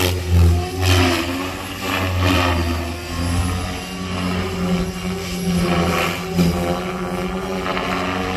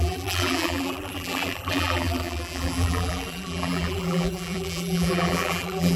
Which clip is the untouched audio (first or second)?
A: first